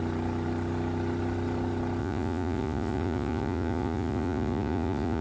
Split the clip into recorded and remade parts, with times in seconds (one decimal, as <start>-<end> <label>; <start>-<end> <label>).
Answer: 0.0-2.0 recorded; 2.0-5.2 remade